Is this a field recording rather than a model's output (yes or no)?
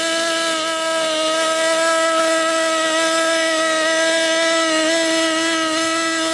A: yes